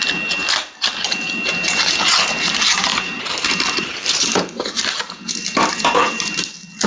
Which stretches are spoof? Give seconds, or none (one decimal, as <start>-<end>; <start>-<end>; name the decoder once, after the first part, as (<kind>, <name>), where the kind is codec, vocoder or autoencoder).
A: 2.9-6.5 (vocoder, BigVGAN v2)